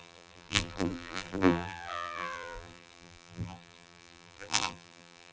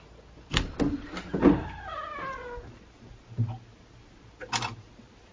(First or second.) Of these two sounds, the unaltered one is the second